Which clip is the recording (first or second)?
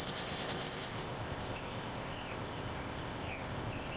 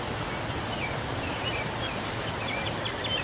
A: second